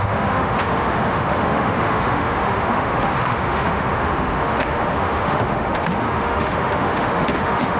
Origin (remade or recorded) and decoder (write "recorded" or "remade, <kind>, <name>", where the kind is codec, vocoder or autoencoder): remade, autoencoder, DAC-VAE